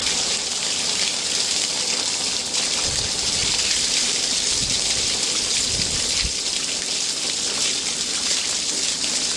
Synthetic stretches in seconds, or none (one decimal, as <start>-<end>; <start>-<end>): none